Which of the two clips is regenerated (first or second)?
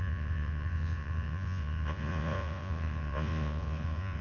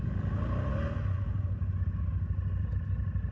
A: first